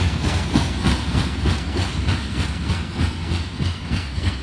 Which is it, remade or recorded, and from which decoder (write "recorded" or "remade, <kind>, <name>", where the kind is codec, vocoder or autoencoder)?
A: remade, codec, SNAC